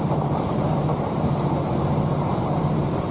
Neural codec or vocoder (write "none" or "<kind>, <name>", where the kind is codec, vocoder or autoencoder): vocoder, BigVGAN v2